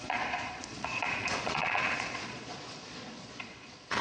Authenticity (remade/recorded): remade